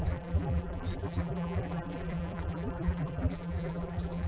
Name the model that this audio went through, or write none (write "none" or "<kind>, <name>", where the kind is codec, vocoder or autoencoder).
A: vocoder, BigVGAN v2